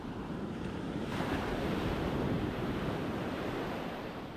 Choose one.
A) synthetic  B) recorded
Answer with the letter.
A